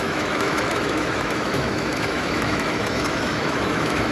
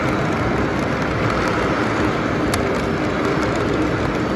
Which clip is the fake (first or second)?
first